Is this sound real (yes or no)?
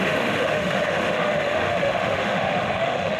no